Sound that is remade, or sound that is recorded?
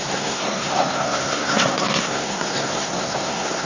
remade